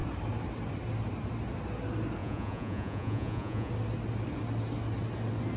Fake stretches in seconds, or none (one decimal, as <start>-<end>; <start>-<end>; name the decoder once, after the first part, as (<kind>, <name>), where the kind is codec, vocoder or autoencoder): 2.2-3.7 (vocoder, Vocos)